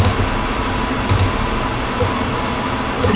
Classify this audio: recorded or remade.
recorded